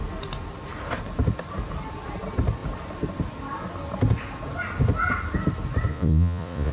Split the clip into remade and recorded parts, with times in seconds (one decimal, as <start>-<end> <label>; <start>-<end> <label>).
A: 0.0-5.9 recorded; 5.9-6.7 remade